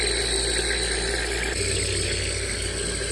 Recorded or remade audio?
recorded